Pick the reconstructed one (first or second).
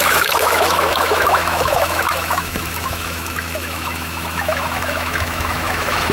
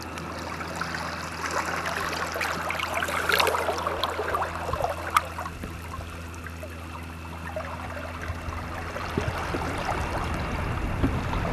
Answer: first